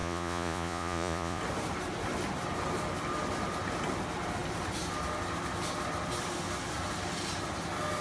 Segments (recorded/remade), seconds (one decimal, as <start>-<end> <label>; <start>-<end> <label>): 0.0-1.4 remade; 1.4-8.0 recorded